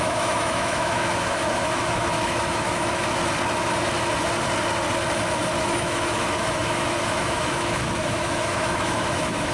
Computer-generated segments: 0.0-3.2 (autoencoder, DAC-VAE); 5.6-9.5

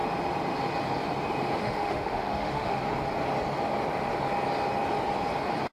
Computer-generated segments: 1.6-2.8 (autoencoder, DAC-VAE)

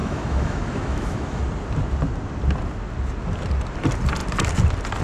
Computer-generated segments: 0.0-1.4 (autoencoder, DAC-VAE)

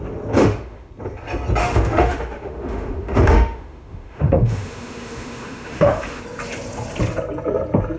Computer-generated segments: 0.4-0.9 (autoencoder, DAC-VAE); 1.6-6.2

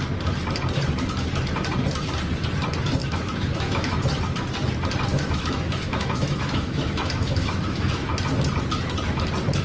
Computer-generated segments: 3.0-4.2 (autoencoder, DAC-VAE); 5.1-8.1